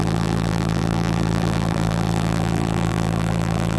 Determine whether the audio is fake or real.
fake